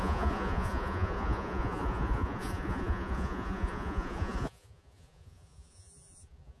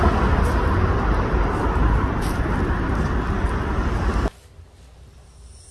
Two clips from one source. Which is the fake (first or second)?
first